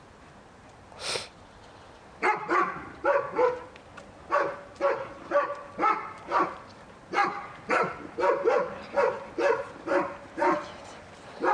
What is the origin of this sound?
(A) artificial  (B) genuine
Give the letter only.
B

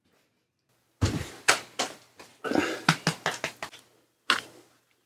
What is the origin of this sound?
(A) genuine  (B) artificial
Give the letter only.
A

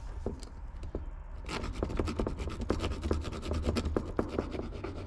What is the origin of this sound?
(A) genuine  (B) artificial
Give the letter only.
A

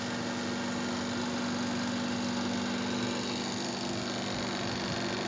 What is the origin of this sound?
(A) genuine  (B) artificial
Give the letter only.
A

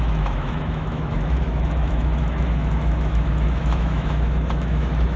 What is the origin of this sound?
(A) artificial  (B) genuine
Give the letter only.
A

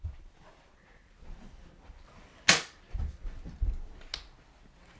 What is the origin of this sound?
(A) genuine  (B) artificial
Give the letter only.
A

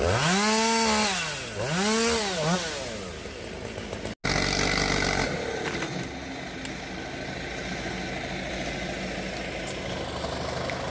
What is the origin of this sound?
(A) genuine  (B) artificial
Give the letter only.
A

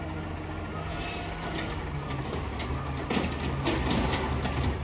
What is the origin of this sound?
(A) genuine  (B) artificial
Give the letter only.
A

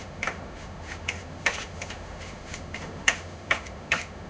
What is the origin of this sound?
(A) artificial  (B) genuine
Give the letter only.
A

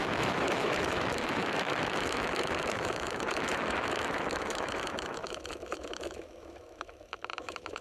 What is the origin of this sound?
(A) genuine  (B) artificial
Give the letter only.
B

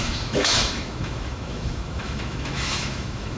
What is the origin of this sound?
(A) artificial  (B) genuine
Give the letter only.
A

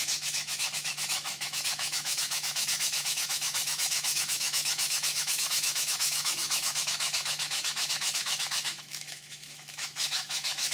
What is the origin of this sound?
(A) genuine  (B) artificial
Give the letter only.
B